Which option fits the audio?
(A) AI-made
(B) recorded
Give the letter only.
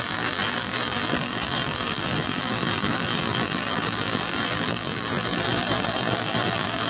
A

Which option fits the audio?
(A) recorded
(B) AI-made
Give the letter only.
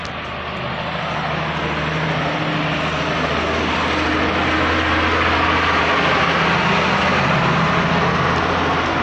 A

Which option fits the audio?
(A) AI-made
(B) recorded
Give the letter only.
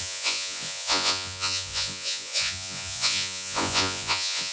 A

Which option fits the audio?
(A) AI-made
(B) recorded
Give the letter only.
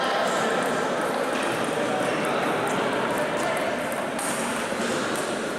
B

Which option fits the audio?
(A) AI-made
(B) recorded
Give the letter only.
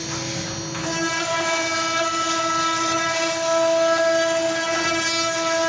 B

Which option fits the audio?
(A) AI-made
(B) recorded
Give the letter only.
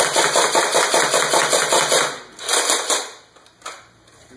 B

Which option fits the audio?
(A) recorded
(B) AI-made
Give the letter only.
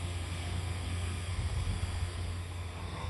B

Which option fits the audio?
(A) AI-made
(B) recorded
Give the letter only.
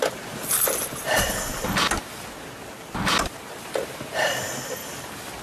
B